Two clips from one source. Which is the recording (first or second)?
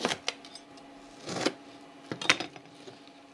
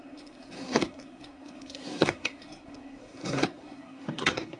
first